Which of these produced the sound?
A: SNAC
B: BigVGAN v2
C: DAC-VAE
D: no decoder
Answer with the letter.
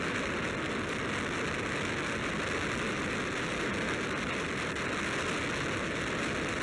D